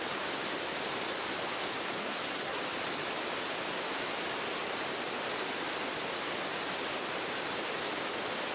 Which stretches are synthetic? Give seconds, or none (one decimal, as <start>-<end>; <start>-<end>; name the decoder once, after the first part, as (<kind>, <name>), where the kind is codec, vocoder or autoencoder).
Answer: 2.0-2.6 (codec, SNAC)